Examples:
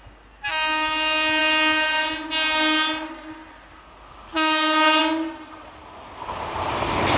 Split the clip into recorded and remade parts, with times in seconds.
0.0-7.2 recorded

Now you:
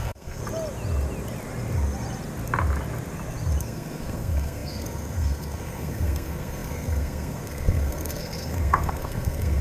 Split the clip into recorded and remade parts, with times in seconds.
0.0-0.4 remade; 0.4-3.6 recorded; 3.6-9.6 remade

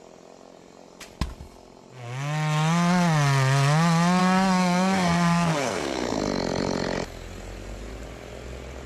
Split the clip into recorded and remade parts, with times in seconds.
0.0-4.2 recorded; 4.2-6.2 remade; 6.2-8.9 recorded

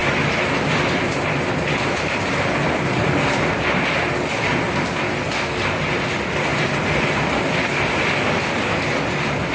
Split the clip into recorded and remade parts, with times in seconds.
0.0-9.5 recorded

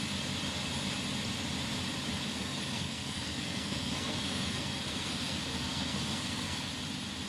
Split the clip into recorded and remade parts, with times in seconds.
0.0-2.3 recorded; 2.3-6.7 remade; 6.7-7.3 recorded

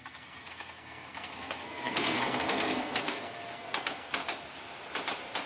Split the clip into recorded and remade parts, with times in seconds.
0.0-4.2 remade; 4.2-5.5 recorded

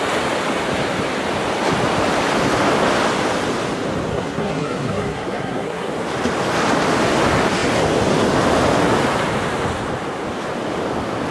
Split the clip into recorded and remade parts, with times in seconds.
0.0-4.1 recorded; 4.1-5.9 remade; 5.9-11.3 recorded